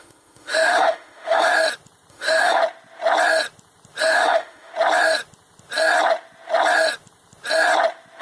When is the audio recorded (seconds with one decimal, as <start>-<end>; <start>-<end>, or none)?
1.5-2.1; 2.6-4.0; 4.7-8.2